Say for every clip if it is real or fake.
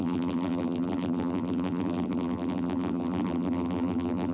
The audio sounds fake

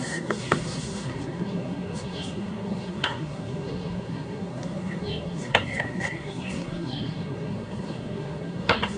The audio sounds fake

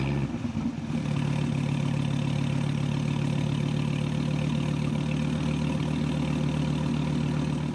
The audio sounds real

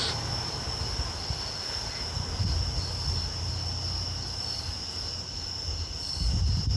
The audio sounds real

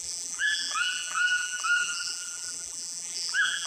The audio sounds fake